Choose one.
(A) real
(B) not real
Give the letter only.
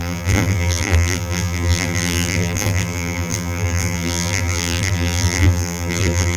B